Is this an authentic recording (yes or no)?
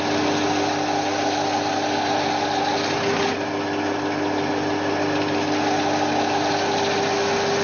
yes